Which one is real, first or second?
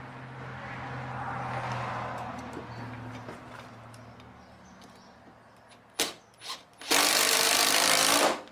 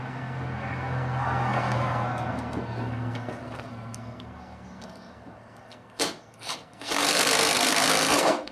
first